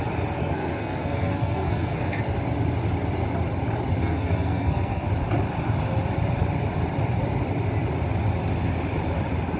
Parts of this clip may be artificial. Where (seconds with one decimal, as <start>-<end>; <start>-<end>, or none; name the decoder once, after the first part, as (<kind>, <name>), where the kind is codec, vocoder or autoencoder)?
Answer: 0.4-2.2 (codec, SNAC); 4.0-5.1